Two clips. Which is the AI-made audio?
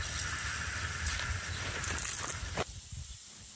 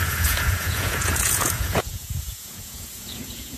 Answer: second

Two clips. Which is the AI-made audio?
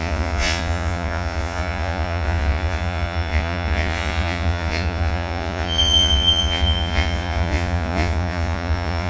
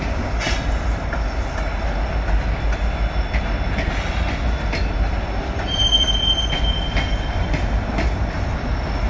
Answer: first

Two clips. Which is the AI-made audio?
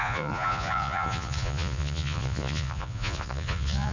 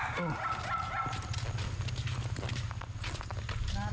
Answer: first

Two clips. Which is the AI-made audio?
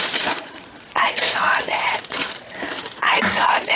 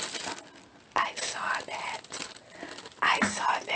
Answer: first